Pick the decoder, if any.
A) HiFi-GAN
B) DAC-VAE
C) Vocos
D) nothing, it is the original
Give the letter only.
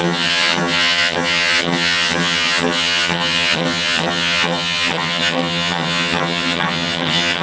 A